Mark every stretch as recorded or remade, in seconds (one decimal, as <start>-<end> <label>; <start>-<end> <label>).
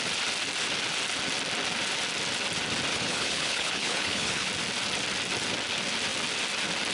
0.0-2.9 recorded; 2.9-4.5 remade; 4.5-6.9 recorded